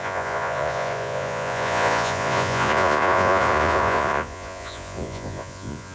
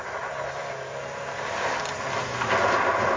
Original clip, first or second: second